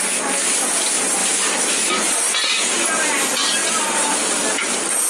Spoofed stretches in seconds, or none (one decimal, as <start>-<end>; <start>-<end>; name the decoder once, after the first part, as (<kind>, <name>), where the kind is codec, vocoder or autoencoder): 1.2-2.2 (vocoder, BigVGAN v2); 3.6-4.3